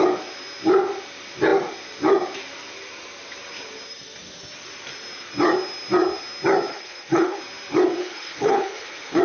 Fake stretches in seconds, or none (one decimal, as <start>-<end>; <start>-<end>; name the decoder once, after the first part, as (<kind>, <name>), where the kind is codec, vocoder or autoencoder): 6.7-7.4 (codec, HILCodec); 8.0-9.2